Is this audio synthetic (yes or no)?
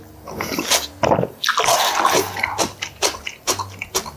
no